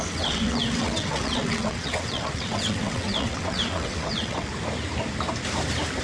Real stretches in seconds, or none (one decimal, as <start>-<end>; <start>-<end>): 4.5-6.0